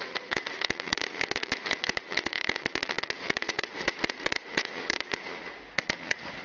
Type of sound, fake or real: fake